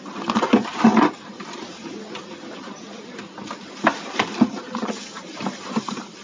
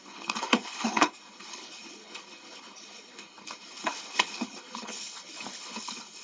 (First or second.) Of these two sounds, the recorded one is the first